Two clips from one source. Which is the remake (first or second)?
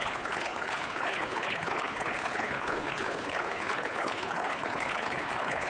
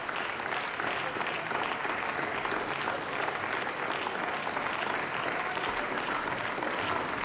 first